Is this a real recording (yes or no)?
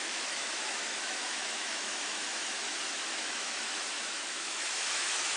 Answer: no